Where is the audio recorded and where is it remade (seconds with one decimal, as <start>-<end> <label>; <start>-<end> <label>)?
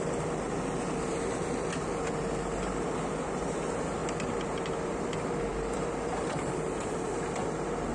0.0-4.0 recorded; 4.0-5.1 remade; 5.1-5.5 recorded; 5.5-7.1 remade; 7.1-7.9 recorded